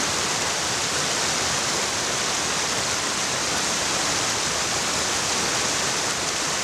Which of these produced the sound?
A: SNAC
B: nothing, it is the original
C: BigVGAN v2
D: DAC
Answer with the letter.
B